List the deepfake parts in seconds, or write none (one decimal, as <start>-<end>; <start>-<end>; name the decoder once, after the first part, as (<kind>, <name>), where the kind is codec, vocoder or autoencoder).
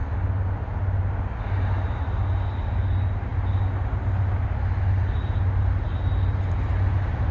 none